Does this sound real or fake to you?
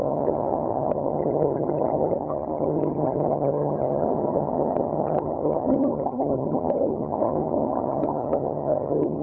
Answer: fake